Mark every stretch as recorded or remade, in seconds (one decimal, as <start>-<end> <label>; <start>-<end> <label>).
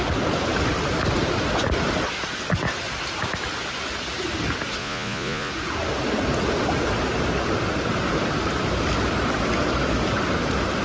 0.0-4.8 recorded; 4.8-5.5 remade; 5.5-10.8 recorded